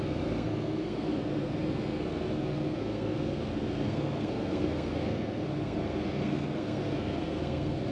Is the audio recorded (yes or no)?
no